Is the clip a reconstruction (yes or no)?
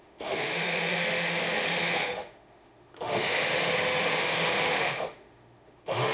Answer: yes